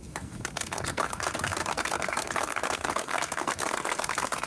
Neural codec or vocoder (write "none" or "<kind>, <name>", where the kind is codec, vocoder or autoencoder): codec, SNAC